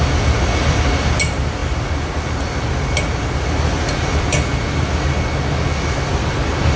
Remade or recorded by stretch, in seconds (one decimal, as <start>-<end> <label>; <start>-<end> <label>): 0.0-6.8 recorded